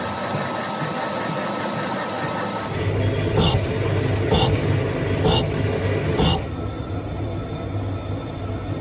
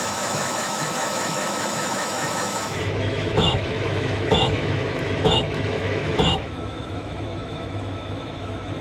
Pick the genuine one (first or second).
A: first